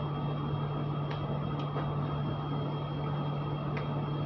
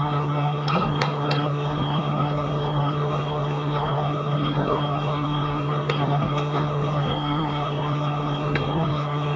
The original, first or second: first